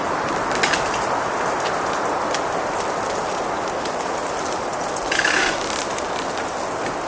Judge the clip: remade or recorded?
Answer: recorded